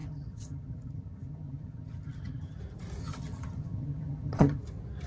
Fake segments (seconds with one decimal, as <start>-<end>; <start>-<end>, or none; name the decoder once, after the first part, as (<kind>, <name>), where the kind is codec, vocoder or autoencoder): 0.0-2.6 (vocoder, HiFi-GAN); 3.0-4.6